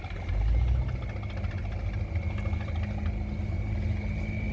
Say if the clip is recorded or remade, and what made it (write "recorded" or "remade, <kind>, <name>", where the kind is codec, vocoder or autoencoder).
recorded